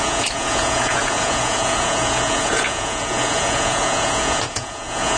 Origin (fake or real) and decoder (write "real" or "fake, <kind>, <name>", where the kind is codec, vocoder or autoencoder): fake, vocoder, Vocos